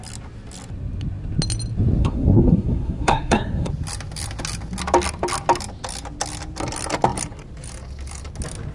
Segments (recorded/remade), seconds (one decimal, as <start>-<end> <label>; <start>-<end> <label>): 0.0-2.0 recorded; 2.0-3.7 remade; 3.7-8.7 recorded